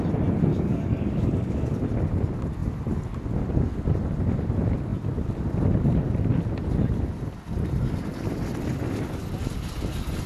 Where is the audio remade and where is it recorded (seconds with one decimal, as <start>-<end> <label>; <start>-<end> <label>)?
0.0-0.5 recorded; 0.5-1.8 remade; 1.8-10.3 recorded

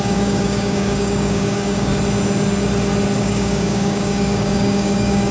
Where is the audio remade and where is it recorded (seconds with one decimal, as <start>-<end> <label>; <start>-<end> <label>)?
0.0-1.9 remade; 1.9-3.2 recorded; 3.2-5.3 remade